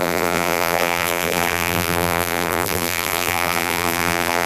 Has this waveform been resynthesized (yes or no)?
yes